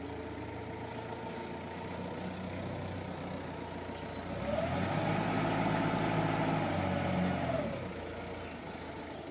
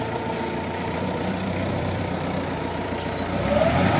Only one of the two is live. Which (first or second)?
first